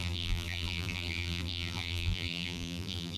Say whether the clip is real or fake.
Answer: fake